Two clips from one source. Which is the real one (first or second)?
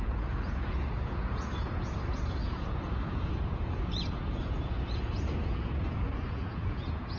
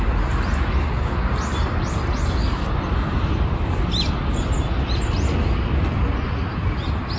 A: second